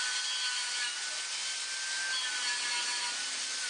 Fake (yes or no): no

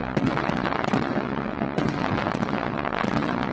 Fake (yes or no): yes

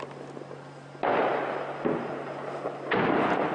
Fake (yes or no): no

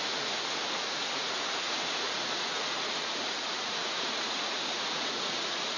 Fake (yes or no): yes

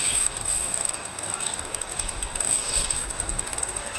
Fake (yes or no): yes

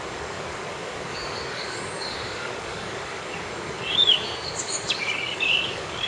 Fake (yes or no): yes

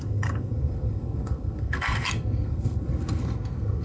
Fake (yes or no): yes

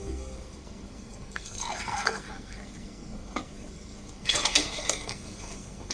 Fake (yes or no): yes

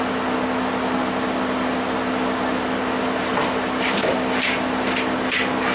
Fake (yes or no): no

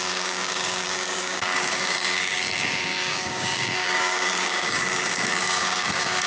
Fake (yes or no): yes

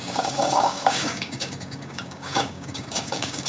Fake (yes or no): yes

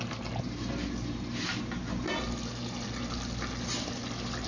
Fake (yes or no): no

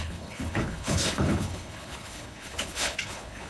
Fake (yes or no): yes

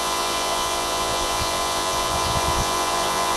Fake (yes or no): yes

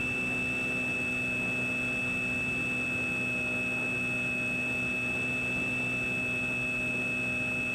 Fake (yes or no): no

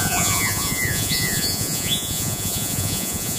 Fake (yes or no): yes